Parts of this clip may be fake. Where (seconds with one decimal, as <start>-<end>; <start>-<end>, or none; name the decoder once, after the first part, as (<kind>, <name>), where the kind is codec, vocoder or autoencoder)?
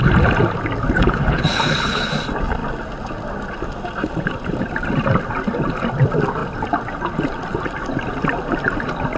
1.0-2.1 (codec, HILCodec)